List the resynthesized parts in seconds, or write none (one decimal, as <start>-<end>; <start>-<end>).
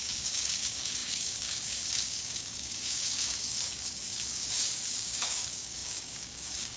0.0-6.8